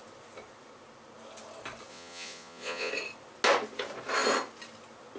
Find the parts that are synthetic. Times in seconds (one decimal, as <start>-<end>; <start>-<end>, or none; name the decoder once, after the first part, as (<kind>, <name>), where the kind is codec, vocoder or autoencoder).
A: 1.9-2.9 (vocoder, Vocos)